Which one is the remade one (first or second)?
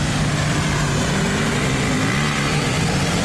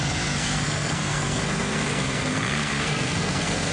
second